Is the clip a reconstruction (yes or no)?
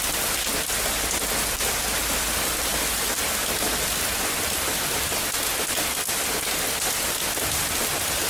no